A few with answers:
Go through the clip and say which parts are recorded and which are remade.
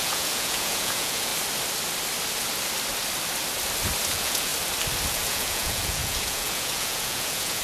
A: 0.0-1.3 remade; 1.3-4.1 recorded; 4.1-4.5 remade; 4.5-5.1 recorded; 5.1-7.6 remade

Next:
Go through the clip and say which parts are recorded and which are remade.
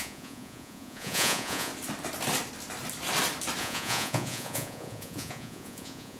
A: 0.0-1.7 remade; 1.7-3.6 recorded; 3.6-6.2 remade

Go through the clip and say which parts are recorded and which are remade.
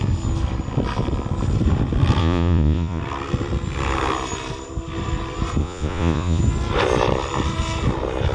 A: 0.0-2.2 recorded; 2.2-3.0 remade; 3.0-5.6 recorded; 5.6-6.4 remade; 6.4-8.3 recorded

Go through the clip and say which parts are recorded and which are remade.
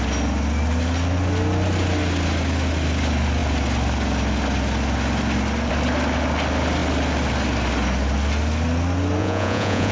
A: 0.0-9.2 recorded; 9.2-9.9 remade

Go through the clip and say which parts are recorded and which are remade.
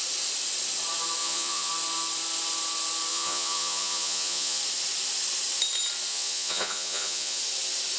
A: 0.0-1.2 recorded; 1.2-1.7 remade; 1.7-3.1 recorded; 3.1-4.6 remade; 4.6-6.1 recorded; 6.1-7.4 remade; 7.4-8.0 recorded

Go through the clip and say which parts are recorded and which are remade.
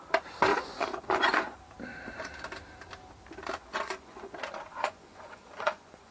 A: 0.0-0.5 recorded; 0.5-1.6 remade; 1.6-3.6 recorded; 3.6-4.3 remade; 4.3-4.7 recorded; 4.7-6.1 remade